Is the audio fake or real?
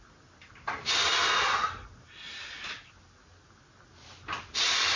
real